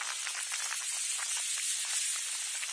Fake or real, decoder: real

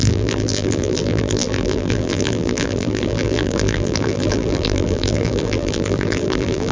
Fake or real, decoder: fake, vocoder, BigVGAN v2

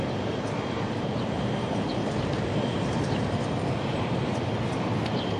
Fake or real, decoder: fake, vocoder, BigVGAN v2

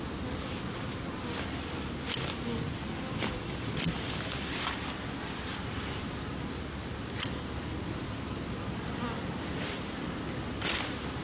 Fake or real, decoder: real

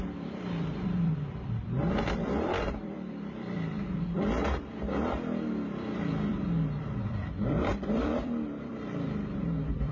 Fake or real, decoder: fake, vocoder, BigVGAN v2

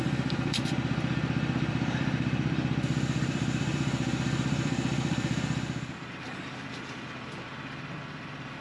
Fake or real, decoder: fake, vocoder, BigVGAN v2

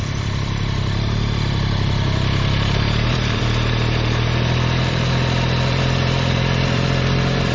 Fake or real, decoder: fake, vocoder, BigVGAN v2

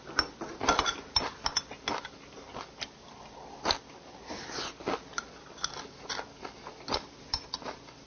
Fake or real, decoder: real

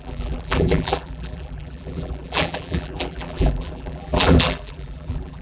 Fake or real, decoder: fake, vocoder, BigVGAN v2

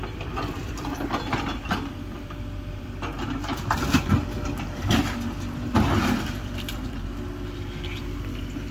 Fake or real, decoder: fake, vocoder, BigVGAN v2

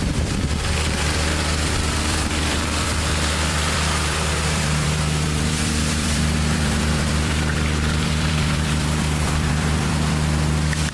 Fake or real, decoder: fake, vocoder, BigVGAN v2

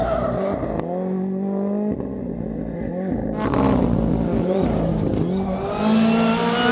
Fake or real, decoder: real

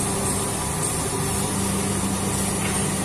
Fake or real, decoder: real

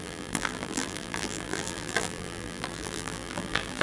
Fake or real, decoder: fake, vocoder, BigVGAN v2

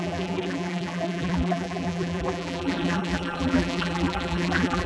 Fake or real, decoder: fake, vocoder, BigVGAN v2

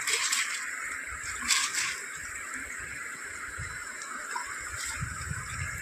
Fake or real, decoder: fake, vocoder, BigVGAN v2